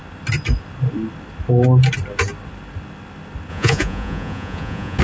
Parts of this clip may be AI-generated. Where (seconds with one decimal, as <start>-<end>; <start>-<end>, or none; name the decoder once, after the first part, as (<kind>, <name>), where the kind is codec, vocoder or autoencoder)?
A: 3.5-5.0 (vocoder, Vocos)